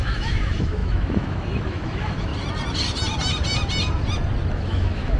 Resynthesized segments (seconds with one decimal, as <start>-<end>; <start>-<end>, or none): 0.0-2.3; 4.5-5.2